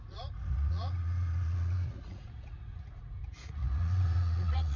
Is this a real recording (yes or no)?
no